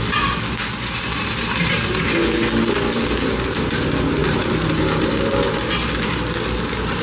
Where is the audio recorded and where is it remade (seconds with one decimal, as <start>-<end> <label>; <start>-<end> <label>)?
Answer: 0.0-0.6 recorded; 0.6-2.1 remade; 2.1-4.2 recorded; 4.2-5.3 remade; 5.3-7.0 recorded